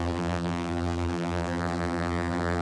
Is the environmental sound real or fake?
fake